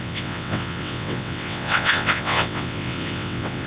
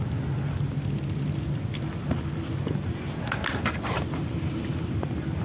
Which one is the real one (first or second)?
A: second